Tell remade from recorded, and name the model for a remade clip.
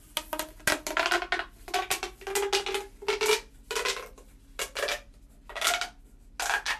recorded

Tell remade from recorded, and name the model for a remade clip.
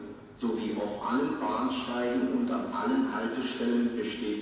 recorded